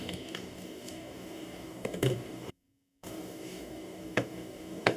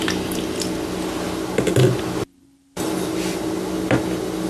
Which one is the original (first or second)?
second